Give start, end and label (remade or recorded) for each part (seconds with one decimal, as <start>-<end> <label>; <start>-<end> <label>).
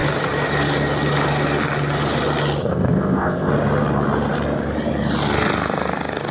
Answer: 0.0-2.6 recorded; 2.6-3.5 remade; 3.5-6.3 recorded